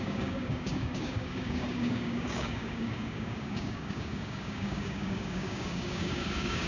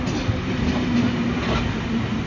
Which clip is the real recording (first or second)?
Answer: second